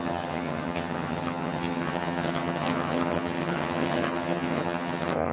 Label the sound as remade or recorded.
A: remade